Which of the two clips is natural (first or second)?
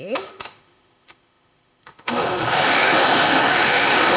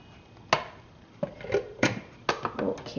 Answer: second